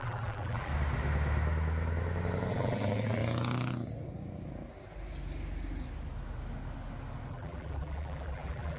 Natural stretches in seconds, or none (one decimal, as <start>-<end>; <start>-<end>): 0.7-2.5; 3.2-7.3